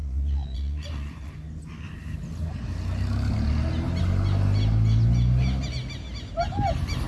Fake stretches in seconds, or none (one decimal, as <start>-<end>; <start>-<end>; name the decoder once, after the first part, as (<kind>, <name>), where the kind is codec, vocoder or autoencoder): 0.0-1.3 (vocoder, Vocos)